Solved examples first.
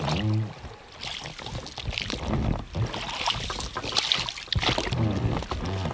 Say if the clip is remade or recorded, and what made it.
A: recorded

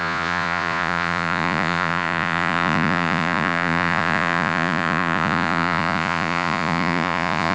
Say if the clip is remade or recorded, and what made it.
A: remade, vocoder, Vocos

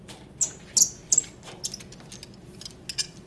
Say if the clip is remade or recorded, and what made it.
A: recorded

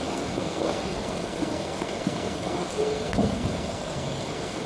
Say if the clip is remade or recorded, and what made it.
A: remade, codec, SNAC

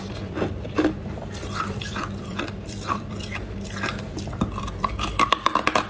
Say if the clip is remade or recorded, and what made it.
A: remade, vocoder, BigVGAN v2